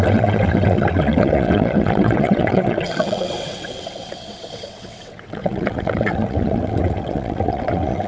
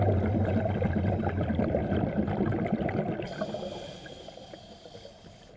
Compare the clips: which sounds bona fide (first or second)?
second